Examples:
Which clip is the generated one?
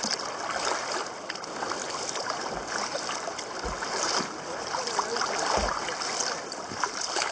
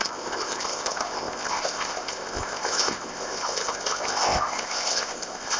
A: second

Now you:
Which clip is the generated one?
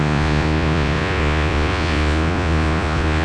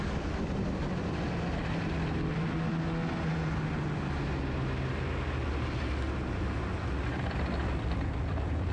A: first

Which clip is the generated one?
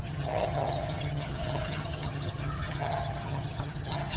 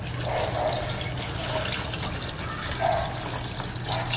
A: first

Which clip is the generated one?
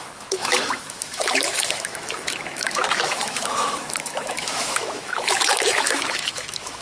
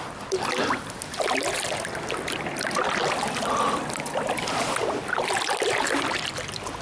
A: first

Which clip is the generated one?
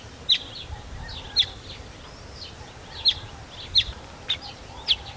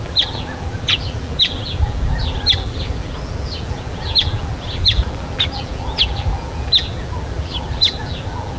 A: second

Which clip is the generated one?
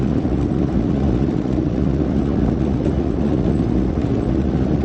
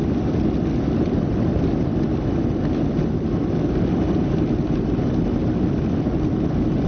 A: first